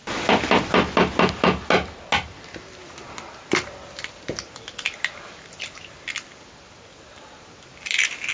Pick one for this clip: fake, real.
real